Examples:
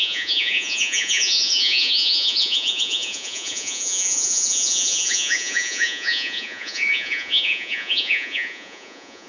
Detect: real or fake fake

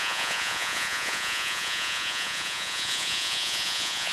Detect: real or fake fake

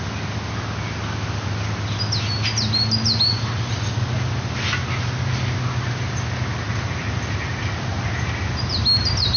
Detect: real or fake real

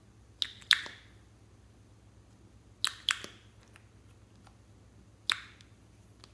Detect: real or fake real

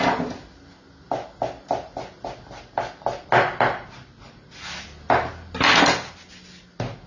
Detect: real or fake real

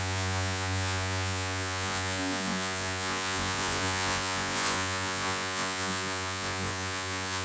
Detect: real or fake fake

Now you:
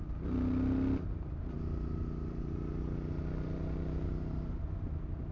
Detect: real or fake real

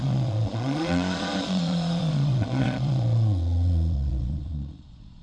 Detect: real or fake fake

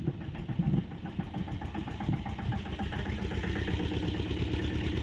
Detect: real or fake real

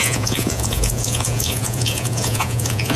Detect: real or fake fake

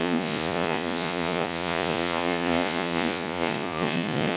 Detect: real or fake fake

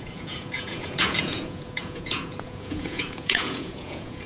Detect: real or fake fake